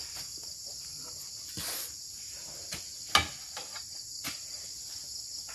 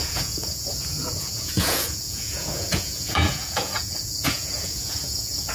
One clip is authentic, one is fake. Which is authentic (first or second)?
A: first